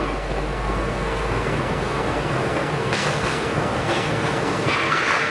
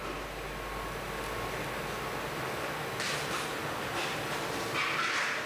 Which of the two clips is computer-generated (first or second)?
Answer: first